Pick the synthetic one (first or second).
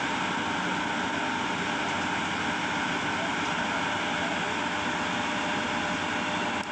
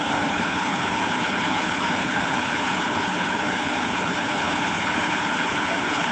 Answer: second